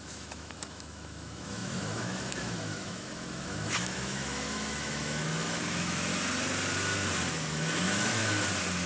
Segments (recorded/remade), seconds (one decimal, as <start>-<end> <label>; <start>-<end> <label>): 0.0-6.1 remade; 6.1-7.3 recorded; 7.3-8.2 remade; 8.2-8.9 recorded